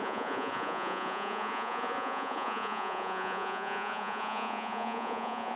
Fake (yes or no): yes